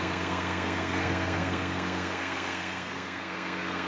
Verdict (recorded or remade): remade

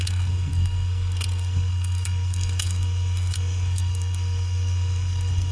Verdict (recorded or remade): remade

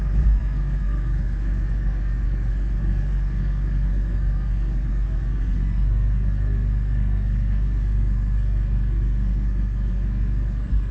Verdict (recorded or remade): remade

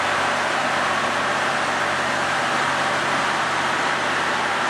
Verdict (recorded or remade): recorded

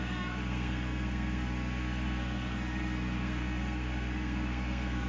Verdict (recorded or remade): remade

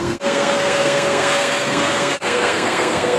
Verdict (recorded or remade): remade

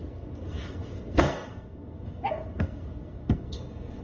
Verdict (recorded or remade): remade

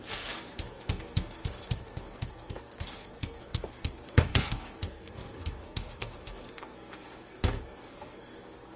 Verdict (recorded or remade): remade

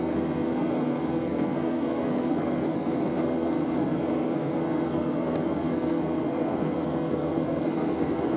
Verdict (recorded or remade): remade